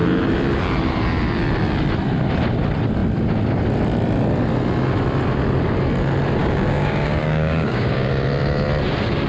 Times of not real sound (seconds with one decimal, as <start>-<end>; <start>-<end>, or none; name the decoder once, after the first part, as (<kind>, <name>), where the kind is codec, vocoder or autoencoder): 6.4-8.1 (codec, DAC)